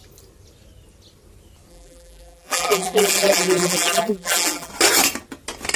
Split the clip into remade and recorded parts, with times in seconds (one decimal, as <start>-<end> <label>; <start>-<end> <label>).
0.0-1.7 recorded; 1.7-4.7 remade; 4.7-5.8 recorded